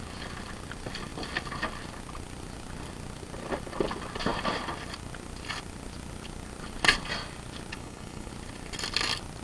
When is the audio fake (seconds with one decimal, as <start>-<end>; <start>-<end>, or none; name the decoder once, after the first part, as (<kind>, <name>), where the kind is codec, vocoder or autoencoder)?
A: 7.7-8.3 (codec, HILCodec)